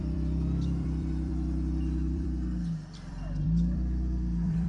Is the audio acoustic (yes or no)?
no